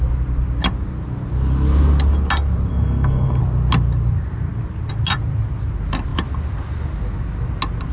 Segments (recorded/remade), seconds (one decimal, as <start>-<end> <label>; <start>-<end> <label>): 0.0-2.7 recorded; 2.7-3.4 remade; 3.4-7.9 recorded